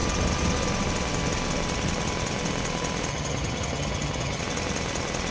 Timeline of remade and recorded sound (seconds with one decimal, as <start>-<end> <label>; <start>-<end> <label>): 0.0-3.1 recorded; 3.1-4.4 remade; 4.4-5.3 recorded